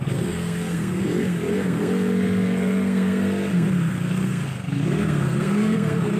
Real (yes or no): no